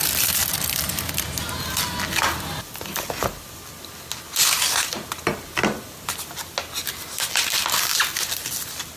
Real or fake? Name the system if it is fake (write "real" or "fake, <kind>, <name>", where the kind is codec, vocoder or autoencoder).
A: real